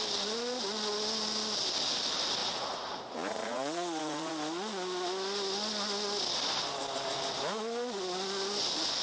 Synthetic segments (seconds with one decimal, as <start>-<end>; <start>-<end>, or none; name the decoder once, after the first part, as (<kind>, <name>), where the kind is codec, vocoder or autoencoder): 2.4-4.3 (vocoder, Vocos)